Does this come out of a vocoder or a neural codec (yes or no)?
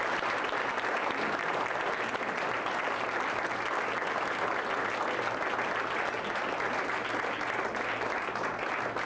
no